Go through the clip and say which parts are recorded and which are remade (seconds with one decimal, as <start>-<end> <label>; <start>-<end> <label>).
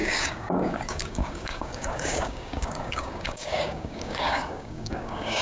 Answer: 0.0-5.4 remade